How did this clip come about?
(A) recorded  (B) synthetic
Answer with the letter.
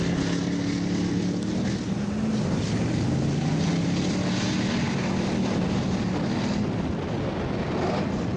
A